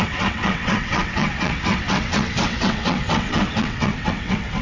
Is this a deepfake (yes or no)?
yes